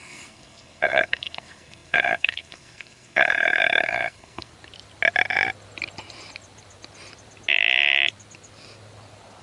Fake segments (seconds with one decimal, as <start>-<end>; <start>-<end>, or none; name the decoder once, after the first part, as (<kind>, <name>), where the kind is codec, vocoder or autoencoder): 0.0-4.5 (codec, SNAC)